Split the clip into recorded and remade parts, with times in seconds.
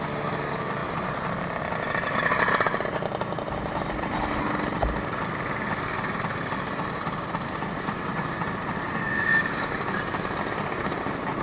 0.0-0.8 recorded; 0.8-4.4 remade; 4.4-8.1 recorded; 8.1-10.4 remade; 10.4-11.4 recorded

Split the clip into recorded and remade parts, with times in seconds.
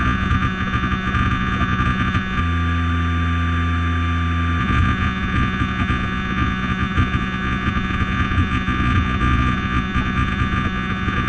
0.0-2.4 remade; 2.4-4.6 recorded; 4.6-11.3 remade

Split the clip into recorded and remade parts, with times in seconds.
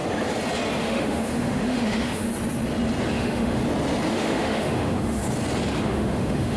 0.0-0.8 recorded; 0.8-2.3 remade; 2.3-3.1 recorded; 3.1-3.6 remade; 3.6-4.1 recorded; 4.1-5.2 remade; 5.2-5.8 recorded; 5.8-6.6 remade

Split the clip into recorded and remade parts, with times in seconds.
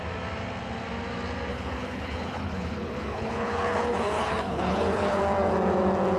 0.0-1.5 recorded; 1.5-5.2 remade; 5.2-6.2 recorded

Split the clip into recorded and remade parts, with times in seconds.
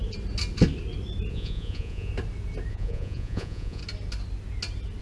0.0-1.3 recorded; 1.3-2.1 remade; 2.1-2.7 recorded; 2.7-3.8 remade; 3.8-5.0 recorded